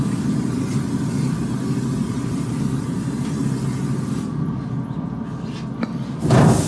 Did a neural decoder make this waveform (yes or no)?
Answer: no